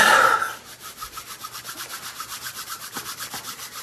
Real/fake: fake